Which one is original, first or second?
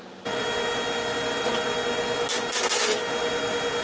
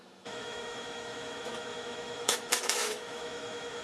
first